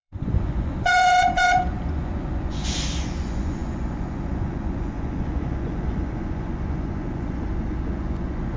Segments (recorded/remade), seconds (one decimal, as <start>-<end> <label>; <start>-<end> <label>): 0.0-8.6 remade